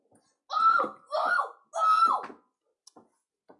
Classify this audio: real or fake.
real